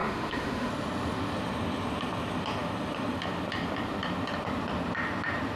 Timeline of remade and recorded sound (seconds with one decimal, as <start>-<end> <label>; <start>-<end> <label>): 0.0-0.7 remade; 0.7-5.6 recorded